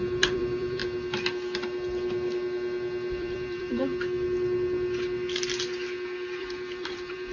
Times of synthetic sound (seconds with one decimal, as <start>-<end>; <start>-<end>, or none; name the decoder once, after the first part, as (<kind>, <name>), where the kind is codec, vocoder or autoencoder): 0.0-0.8 (vocoder, BigVGAN v2); 3.1-3.9; 6.4-7.3